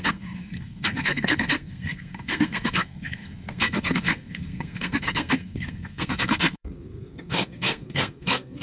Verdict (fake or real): fake